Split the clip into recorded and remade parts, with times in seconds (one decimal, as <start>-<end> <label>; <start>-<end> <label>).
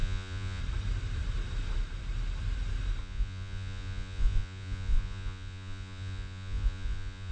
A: 0.0-0.6 remade; 0.6-3.0 recorded; 3.0-7.3 remade